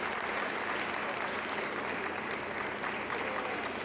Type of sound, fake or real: real